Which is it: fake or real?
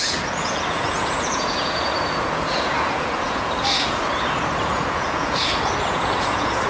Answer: fake